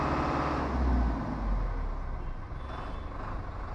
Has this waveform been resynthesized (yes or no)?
no